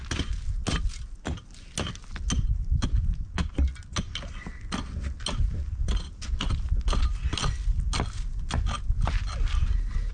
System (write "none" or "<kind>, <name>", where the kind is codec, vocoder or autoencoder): none